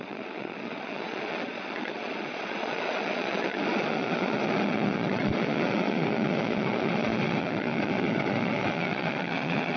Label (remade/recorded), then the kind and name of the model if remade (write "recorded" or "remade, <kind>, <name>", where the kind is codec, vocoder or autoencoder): remade, vocoder, Vocos